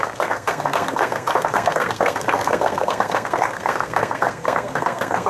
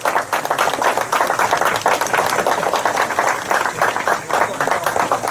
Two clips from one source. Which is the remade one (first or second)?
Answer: first